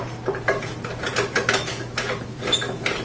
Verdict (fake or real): fake